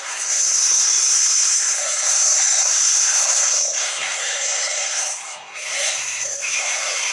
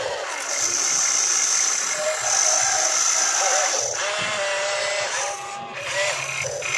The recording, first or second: second